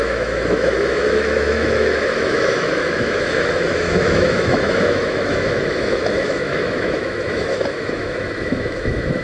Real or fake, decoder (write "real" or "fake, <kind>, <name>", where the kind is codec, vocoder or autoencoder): fake, autoencoder, DAC-VAE